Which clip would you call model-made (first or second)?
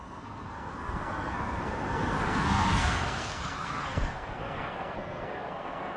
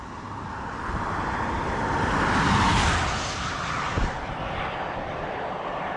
first